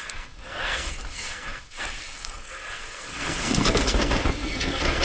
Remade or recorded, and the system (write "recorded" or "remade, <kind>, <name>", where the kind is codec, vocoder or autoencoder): remade, codec, SNAC